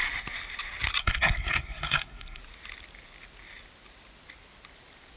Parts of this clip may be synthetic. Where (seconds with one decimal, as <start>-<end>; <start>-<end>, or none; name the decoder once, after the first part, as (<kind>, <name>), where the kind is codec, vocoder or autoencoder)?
1.0-2.4 (codec, SNAC)